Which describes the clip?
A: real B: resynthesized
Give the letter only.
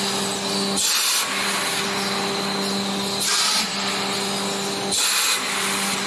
A